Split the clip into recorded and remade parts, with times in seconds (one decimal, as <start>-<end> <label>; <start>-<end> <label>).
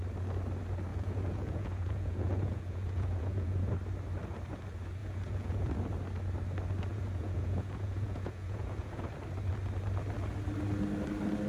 0.0-0.9 recorded; 0.9-3.7 remade; 3.7-5.0 recorded; 5.0-5.7 remade; 5.7-6.9 recorded; 6.9-9.1 remade; 9.1-11.5 recorded